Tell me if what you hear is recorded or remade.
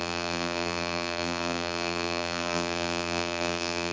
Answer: remade